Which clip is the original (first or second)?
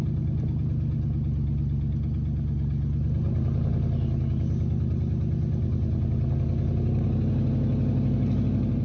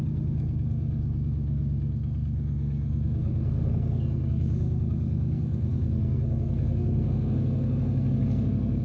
first